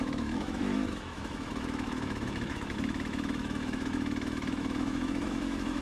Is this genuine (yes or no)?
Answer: no